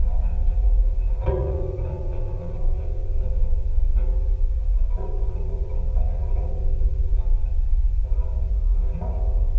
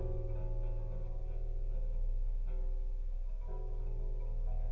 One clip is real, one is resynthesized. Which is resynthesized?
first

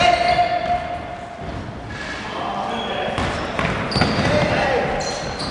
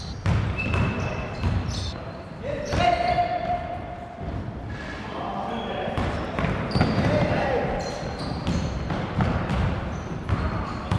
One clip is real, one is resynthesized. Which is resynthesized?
second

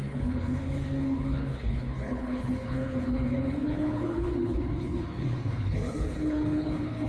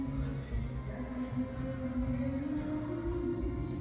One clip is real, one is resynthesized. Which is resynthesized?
first